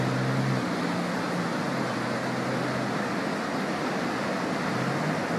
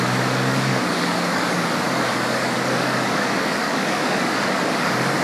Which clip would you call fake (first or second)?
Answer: second